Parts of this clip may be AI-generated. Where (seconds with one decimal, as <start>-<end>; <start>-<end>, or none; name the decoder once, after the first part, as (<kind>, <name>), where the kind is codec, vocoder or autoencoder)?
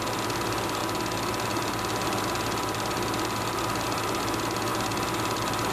0.8-4.2 (vocoder, BigVGAN v2)